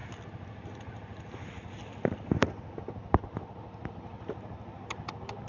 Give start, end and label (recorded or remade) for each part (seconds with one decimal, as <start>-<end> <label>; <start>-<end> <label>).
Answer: 0.0-5.5 recorded